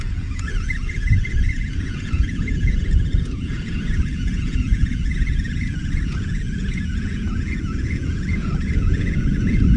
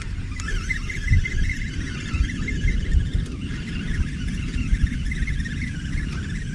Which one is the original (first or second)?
second